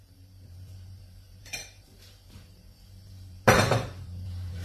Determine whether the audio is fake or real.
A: fake